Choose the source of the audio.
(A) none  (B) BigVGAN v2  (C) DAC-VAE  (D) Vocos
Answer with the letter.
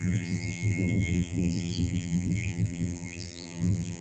B